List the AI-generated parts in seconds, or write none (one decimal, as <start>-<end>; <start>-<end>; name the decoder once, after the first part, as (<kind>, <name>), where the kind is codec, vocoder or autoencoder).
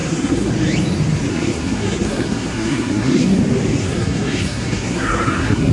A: 0.0-0.5 (codec, SNAC); 1.3-3.4; 3.8-5.7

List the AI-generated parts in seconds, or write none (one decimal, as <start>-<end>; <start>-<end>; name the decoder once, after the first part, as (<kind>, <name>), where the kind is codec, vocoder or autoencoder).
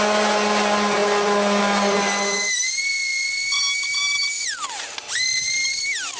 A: none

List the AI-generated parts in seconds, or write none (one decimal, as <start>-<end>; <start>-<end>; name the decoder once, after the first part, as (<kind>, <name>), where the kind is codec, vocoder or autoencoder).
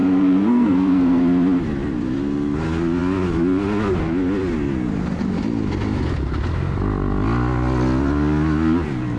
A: 0.0-1.2 (codec, SNAC)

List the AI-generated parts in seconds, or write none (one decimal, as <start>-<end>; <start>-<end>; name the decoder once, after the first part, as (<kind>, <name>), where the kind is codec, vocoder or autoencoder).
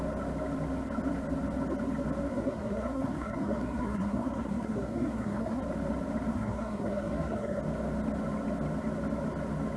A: 2.3-5.6 (codec, SNAC); 6.3-7.6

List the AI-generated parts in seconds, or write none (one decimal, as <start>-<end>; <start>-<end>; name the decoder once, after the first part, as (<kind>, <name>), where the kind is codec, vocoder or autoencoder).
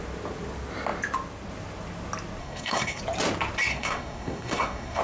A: 2.4-3.0 (codec, SNAC); 3.7-5.0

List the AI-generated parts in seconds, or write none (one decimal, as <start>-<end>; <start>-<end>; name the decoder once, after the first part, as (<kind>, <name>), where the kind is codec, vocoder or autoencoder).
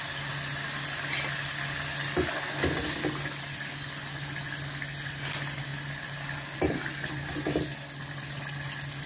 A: none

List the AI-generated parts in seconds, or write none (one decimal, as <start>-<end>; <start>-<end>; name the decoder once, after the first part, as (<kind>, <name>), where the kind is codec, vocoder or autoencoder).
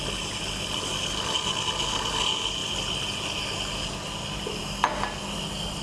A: none